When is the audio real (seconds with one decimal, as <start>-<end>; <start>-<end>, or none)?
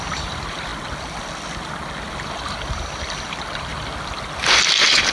0.7-2.1; 3.7-4.6